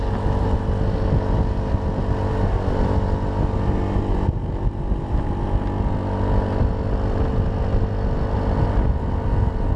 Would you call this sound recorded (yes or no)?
yes